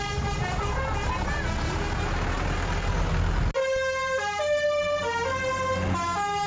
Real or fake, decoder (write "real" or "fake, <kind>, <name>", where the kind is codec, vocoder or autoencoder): real